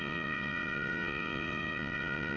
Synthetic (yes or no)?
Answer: yes